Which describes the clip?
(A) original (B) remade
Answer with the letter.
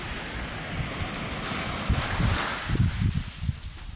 A